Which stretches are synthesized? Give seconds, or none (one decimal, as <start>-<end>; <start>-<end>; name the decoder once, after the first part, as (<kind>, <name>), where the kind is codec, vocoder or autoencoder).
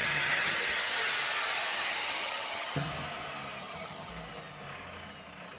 0.0-1.1 (vocoder, HiFi-GAN); 1.7-2.9; 3.6-4.1